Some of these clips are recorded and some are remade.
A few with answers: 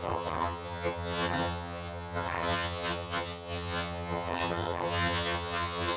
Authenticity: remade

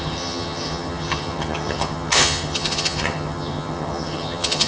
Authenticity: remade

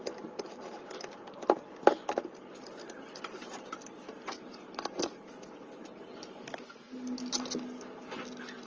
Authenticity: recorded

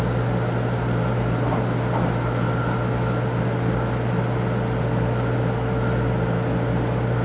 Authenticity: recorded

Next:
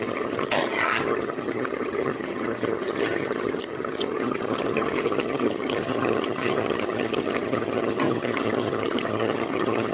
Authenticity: remade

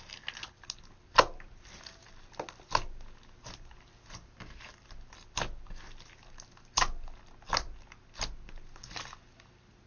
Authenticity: recorded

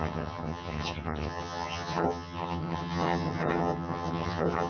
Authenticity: remade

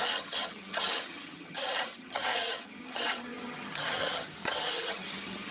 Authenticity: remade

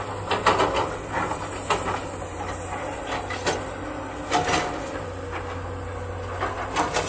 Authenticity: recorded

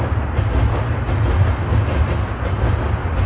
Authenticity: recorded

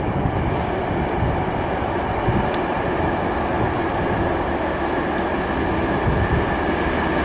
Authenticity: recorded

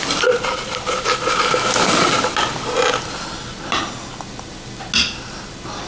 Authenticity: recorded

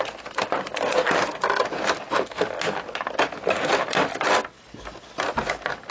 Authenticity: recorded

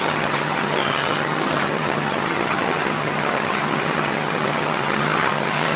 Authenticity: remade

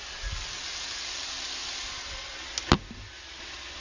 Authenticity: recorded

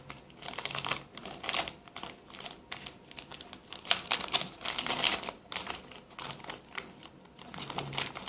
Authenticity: recorded